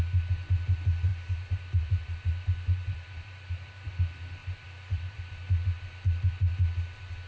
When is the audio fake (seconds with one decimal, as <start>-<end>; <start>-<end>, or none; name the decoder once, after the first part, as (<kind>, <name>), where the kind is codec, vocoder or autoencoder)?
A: 1.1-3.9 (vocoder, BigVGAN v2); 4.4-5.2